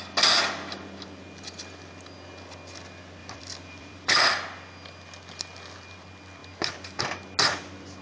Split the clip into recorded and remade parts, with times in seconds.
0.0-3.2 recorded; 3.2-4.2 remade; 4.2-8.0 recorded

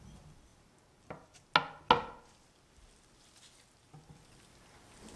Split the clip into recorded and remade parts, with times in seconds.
0.0-5.2 recorded